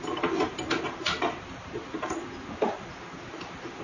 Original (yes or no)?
yes